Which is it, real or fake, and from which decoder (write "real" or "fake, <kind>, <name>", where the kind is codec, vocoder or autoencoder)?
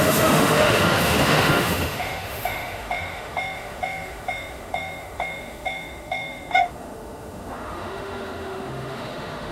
fake, autoencoder, DAC-VAE